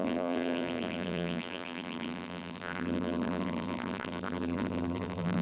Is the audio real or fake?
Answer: fake